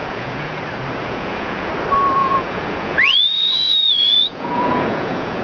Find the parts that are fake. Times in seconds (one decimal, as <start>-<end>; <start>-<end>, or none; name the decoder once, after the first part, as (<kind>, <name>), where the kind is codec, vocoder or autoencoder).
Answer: 0.0-0.6 (vocoder, Vocos); 1.0-1.7; 2.2-5.4